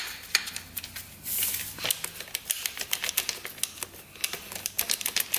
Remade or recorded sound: recorded